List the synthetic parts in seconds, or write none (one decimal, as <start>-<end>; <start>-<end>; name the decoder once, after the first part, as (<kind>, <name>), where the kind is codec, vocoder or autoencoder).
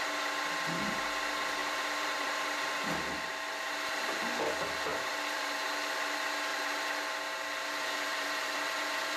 1.6-4.1 (vocoder, BigVGAN v2); 4.9-5.6; 6.5-9.2